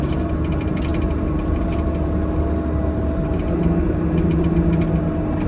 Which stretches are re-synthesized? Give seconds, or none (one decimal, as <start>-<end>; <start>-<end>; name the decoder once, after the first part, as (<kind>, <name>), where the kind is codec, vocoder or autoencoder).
none